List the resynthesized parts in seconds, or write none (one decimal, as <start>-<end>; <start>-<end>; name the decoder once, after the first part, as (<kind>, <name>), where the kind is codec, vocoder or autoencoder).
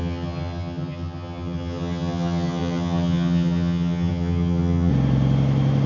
0.0-4.9 (vocoder, HiFi-GAN)